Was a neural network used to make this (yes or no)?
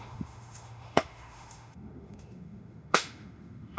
yes